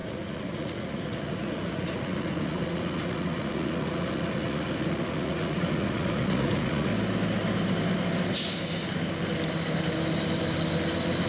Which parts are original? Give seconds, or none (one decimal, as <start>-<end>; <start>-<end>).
6.9-11.3